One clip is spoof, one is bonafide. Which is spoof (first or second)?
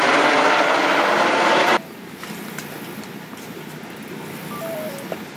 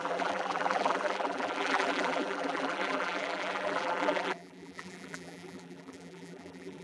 second